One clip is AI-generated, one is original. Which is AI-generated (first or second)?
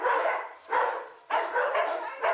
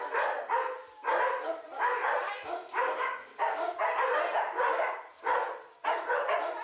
first